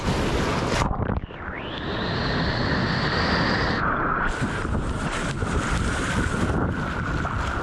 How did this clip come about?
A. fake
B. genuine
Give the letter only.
B